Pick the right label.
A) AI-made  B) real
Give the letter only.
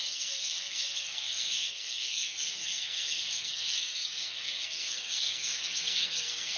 A